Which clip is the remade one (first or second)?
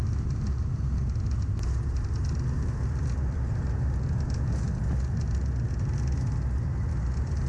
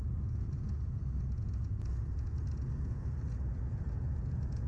second